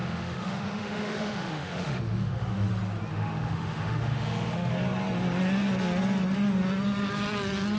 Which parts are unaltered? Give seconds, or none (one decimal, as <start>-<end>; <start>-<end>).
2.7-3.1; 4.7-7.8